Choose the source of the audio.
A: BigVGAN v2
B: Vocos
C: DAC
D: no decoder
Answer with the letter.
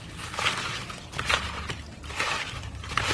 D